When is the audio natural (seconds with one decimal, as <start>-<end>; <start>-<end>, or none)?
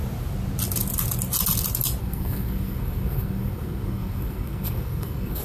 0.0-2.0